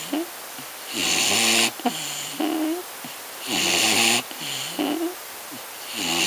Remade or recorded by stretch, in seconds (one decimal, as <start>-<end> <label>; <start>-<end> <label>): 0.0-6.3 recorded